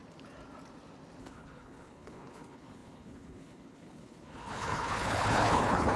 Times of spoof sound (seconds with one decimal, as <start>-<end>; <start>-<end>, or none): 1.2-6.0

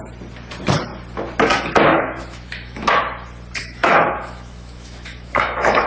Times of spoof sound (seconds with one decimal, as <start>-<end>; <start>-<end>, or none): 1.9-2.9; 3.6-5.9

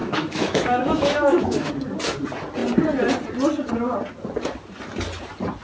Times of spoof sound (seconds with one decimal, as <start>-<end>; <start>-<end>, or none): 0.0-1.7

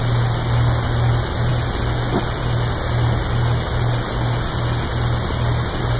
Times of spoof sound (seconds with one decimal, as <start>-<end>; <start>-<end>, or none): none

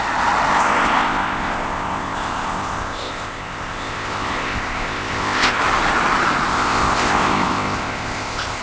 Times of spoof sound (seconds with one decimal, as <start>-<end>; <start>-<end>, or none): 0.5-5.6; 6.5-8.6

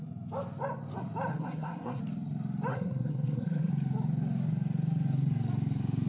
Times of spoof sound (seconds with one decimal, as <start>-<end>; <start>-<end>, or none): 1.3-2.0; 2.7-3.7

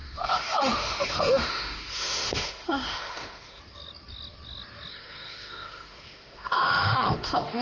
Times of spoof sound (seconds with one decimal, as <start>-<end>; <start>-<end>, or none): 0.0-3.6; 4.9-7.6

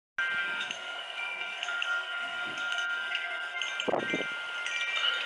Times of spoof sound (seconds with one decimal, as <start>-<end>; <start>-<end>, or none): 0.4-3.6